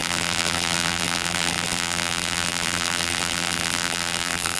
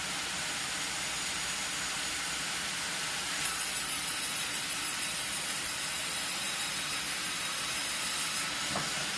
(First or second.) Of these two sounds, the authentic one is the second